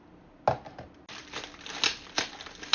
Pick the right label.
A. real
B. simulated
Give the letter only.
A